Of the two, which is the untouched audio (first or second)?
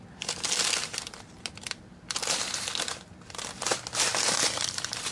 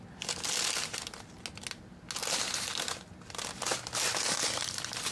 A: second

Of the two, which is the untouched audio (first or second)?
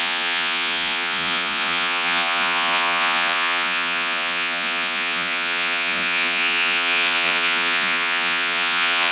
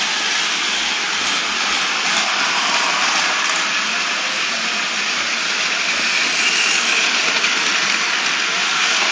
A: second